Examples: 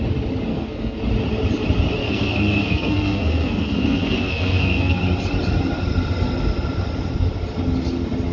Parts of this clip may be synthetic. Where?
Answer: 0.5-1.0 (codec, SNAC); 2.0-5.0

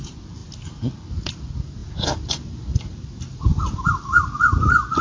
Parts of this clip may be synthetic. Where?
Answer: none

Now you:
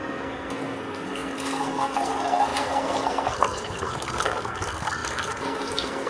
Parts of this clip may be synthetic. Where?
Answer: 0.0-6.1 (codec, SNAC)

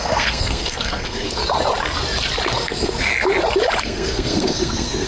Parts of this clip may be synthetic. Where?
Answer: 0.0-1.4 (codec, SNAC); 2.5-3.1; 3.8-5.1

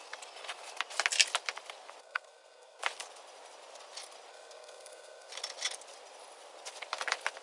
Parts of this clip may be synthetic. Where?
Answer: 2.0-2.8 (codec, SNAC); 4.3-5.3